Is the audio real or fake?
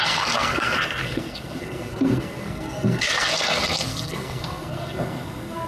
fake